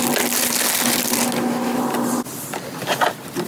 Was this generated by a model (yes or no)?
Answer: no